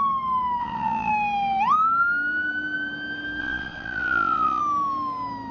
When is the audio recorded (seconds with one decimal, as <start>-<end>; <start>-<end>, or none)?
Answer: 0.0-0.6; 1.1-3.4; 4.6-5.5